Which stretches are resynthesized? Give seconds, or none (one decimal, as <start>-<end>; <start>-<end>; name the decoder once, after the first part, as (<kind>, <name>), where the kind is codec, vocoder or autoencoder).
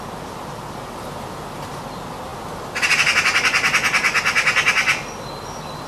none